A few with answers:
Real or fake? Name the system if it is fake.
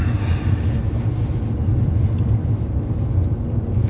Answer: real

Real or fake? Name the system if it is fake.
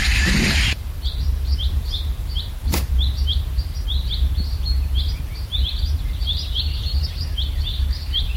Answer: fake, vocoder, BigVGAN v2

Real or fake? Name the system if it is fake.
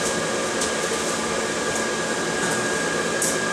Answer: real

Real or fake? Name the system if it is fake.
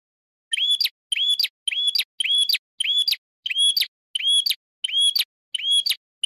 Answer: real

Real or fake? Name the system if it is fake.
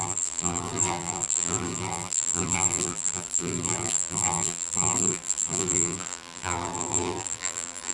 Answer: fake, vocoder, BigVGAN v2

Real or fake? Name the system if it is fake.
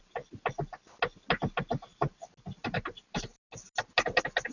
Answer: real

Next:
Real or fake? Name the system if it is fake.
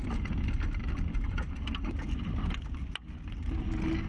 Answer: real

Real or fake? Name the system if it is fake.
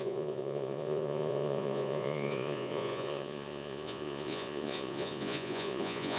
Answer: fake, vocoder, Vocos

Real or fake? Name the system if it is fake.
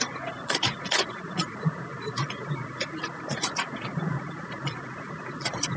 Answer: fake, vocoder, Vocos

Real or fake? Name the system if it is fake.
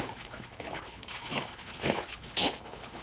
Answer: fake, codec, HILCodec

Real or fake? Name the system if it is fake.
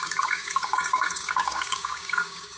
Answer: fake, codec, DAC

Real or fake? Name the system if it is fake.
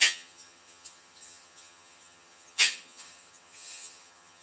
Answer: fake, vocoder, HiFi-GAN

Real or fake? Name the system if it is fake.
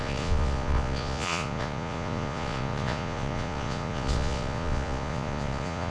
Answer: fake, vocoder, Vocos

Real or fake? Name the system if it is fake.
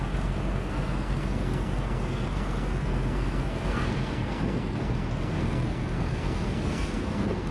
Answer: fake, codec, SNAC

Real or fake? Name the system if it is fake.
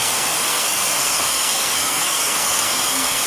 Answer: fake, codec, SNAC